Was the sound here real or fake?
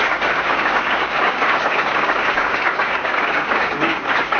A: fake